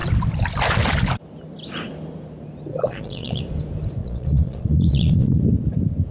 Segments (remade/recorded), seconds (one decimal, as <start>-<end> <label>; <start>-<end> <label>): 0.0-2.7 recorded; 2.7-3.4 remade; 3.4-4.0 recorded; 4.0-5.4 remade; 5.4-6.1 recorded